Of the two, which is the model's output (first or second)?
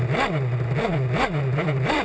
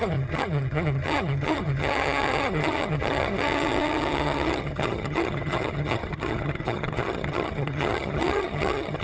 second